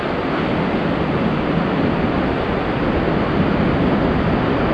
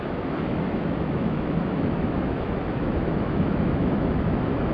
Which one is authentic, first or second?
first